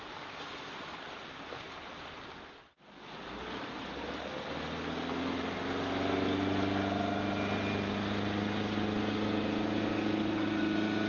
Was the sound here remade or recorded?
recorded